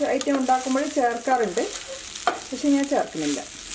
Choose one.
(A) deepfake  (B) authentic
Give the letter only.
B